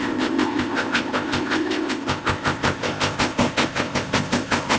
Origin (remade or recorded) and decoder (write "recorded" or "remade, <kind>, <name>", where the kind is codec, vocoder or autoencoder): remade, codec, ZipCodec